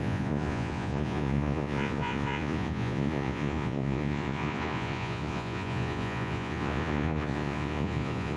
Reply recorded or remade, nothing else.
remade